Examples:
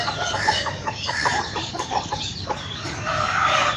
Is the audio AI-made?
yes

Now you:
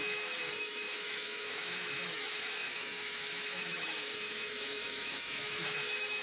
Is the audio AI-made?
yes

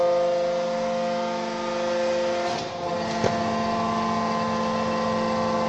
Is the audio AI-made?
no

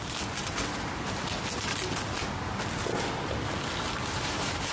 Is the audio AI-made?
no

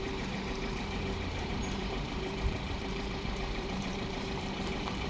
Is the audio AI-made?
yes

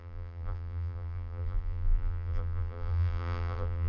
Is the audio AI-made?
yes